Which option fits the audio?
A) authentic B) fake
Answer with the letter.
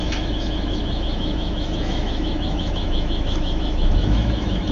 B